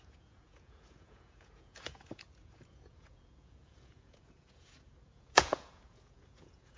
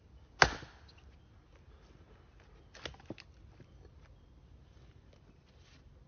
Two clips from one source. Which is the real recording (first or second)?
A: second